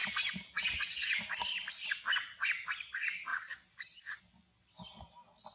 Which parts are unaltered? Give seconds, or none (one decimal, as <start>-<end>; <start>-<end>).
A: 0.7-3.3; 4.2-5.5